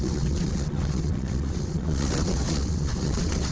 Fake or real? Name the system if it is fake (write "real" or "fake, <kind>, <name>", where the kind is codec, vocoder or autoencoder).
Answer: fake, vocoder, WaveNeXt